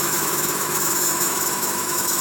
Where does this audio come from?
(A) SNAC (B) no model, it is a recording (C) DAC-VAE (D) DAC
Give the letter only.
C